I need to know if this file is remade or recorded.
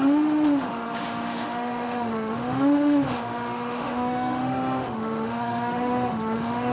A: remade